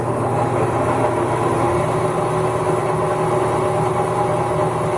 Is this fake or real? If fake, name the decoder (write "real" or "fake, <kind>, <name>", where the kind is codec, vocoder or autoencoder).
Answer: real